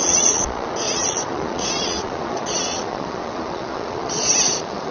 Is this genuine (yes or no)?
no